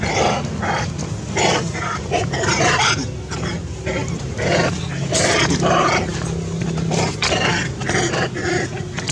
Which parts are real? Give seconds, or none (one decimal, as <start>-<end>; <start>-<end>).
0.0-2.2; 2.9-4.0; 4.8-9.1